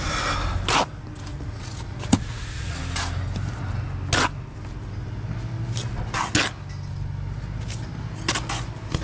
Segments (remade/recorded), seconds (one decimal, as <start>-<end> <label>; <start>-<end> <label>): 0.0-1.3 recorded; 1.3-2.8 remade; 2.8-9.0 recorded